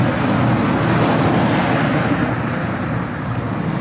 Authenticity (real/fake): real